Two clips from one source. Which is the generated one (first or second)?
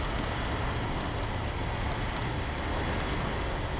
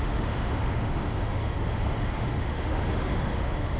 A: second